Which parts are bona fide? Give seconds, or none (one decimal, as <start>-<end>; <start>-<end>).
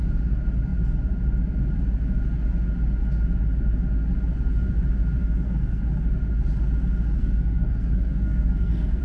0.0-5.2; 5.8-7.2